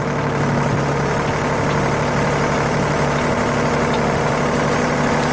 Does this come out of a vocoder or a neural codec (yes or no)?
no